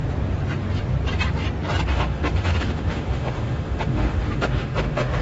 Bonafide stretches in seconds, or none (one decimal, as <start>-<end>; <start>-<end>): 0.0-1.9